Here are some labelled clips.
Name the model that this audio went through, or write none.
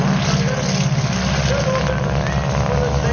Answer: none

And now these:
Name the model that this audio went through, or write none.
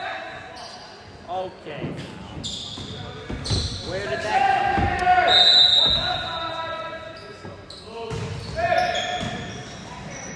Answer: none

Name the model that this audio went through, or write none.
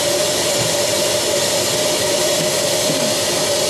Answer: none